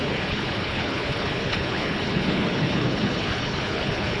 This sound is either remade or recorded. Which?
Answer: remade